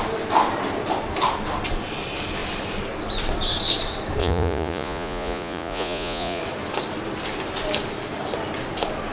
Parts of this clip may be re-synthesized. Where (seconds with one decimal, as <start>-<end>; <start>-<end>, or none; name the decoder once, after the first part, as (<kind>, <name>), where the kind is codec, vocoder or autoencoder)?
4.2-6.4 (vocoder, Vocos)